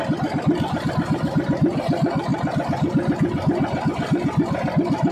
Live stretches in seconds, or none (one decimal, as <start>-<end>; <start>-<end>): 0.0-5.1